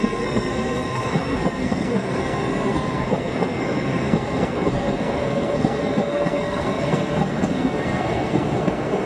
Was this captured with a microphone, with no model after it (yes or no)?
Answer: no